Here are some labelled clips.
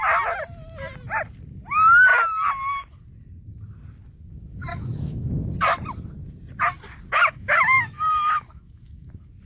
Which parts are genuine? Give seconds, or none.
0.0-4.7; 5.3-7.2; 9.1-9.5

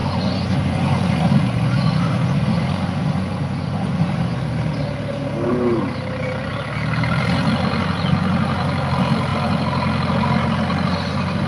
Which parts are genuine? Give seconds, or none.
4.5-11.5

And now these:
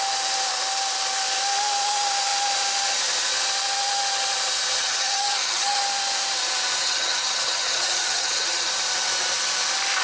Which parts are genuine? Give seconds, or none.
0.0-4.8; 5.8-6.8; 8.7-10.0

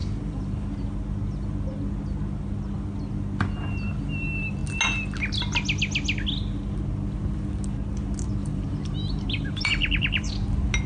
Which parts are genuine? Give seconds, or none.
0.7-8.4; 10.3-10.9